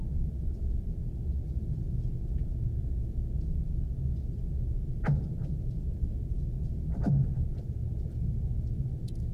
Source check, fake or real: real